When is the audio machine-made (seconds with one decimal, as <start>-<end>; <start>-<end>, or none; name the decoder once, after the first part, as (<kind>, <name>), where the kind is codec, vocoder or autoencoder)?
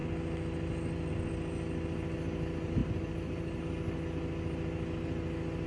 2.8-3.6 (vocoder, BigVGAN v2)